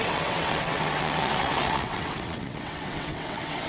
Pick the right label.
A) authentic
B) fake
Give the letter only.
B